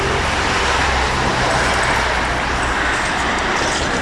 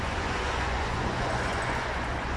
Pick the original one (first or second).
first